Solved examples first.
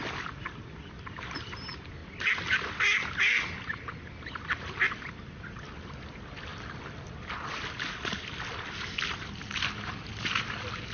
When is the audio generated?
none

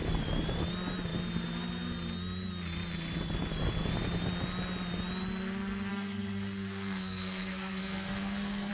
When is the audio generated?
5.9-8.7 (codec, SNAC)

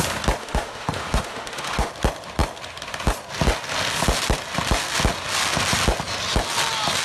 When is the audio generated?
0.4-1.9 (autoencoder, DAC-VAE)

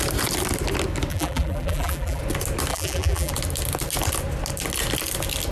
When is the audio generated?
1.1-2.2 (vocoder, BigVGAN v2); 2.7-3.3

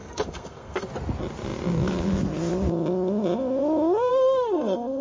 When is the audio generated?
0.0-0.9 (codec, SNAC); 4.1-5.0